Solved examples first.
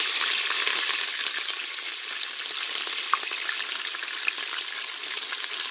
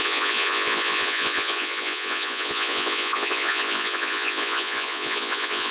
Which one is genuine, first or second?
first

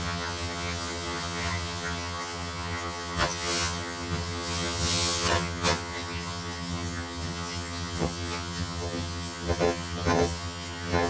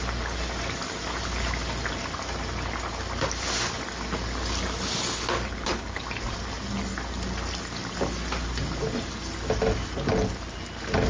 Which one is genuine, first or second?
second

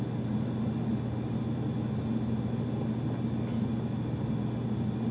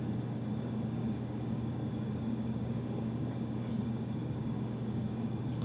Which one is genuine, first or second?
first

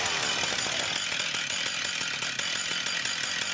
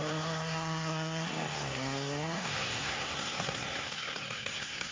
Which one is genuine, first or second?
first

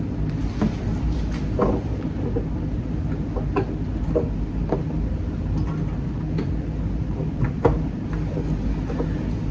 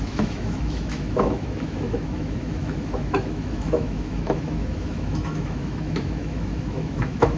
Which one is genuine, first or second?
first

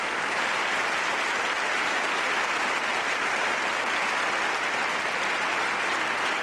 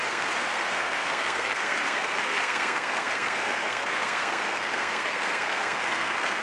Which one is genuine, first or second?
first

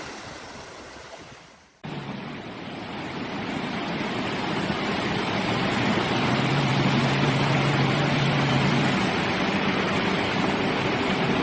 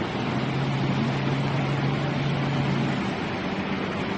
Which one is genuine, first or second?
second